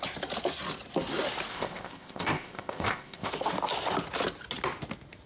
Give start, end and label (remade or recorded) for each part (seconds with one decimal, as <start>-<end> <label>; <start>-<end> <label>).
0.0-1.5 recorded; 1.5-3.3 remade; 3.3-5.3 recorded